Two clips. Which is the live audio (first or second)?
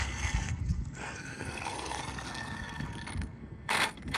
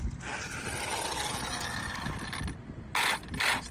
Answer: second